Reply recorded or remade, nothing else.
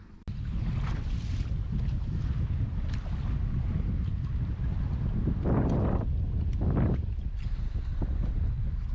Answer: recorded